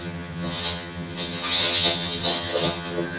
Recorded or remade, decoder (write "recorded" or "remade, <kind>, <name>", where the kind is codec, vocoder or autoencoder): remade, vocoder, HiFi-GAN